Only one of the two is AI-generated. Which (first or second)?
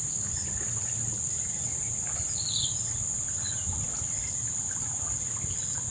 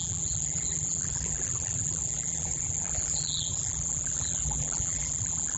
second